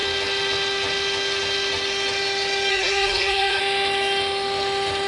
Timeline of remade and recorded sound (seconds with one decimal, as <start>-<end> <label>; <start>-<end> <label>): 0.0-2.7 recorded; 2.7-3.6 remade; 3.6-5.1 recorded